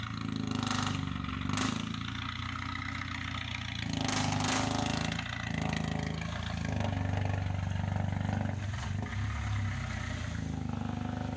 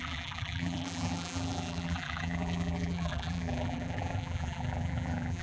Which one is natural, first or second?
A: first